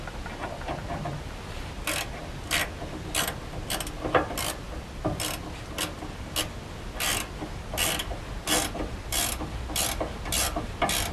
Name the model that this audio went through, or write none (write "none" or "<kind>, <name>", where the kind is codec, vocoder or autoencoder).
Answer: none